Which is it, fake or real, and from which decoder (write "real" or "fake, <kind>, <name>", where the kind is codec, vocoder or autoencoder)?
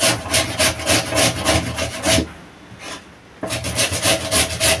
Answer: real